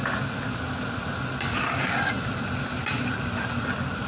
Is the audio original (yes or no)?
yes